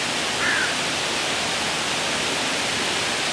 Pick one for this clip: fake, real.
real